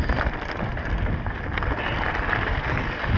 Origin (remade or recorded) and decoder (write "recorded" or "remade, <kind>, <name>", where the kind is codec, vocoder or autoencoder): recorded